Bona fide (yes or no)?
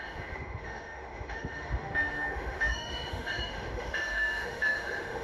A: no